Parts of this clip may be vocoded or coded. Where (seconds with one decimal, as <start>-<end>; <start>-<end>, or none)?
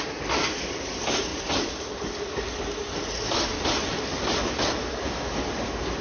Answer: none